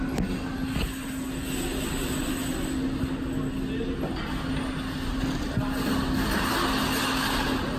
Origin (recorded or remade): recorded